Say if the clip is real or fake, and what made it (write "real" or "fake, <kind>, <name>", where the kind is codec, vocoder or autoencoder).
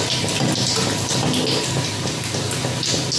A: real